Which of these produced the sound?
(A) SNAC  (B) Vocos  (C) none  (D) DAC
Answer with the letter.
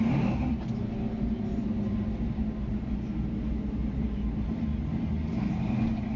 C